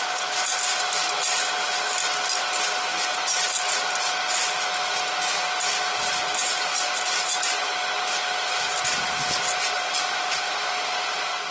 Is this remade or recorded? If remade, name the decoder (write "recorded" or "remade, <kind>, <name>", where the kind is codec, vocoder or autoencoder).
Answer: recorded